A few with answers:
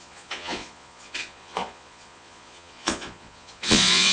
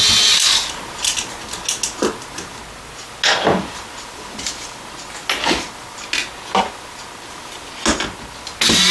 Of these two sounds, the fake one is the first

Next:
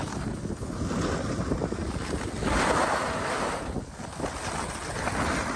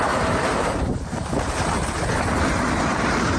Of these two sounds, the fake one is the second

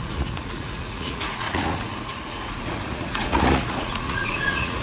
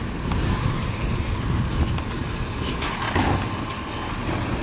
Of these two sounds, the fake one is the first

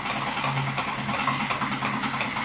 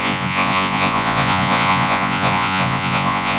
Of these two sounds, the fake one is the second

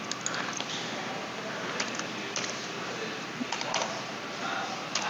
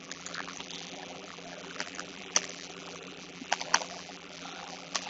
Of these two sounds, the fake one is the second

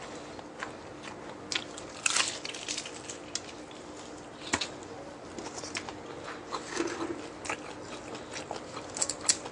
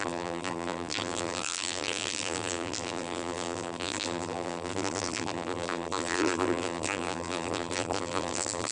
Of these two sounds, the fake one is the second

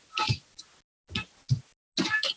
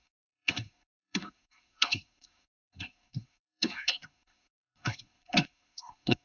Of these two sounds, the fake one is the second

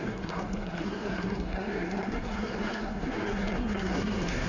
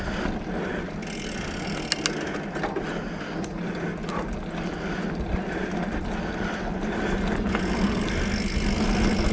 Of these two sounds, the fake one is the first